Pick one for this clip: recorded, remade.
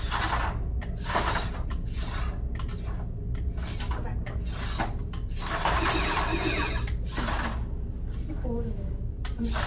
recorded